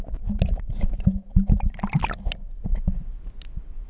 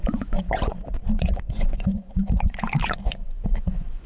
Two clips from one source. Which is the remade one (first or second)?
second